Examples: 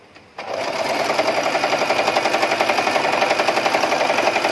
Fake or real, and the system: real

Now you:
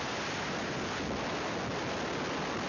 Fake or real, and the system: real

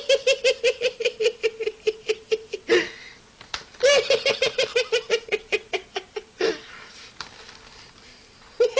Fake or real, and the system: real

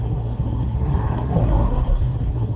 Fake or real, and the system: fake, codec, SNAC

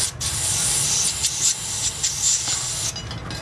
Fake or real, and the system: real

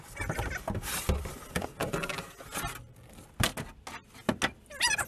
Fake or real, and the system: real